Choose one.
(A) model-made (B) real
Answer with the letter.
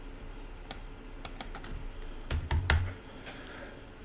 B